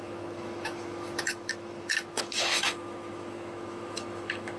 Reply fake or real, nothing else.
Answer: fake